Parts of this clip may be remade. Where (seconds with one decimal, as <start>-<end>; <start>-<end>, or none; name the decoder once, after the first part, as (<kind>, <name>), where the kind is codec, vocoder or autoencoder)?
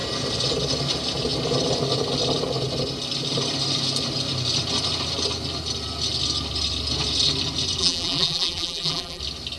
7.8-9.2 (vocoder, BigVGAN v2)